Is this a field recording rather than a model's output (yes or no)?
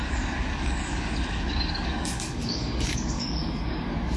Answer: no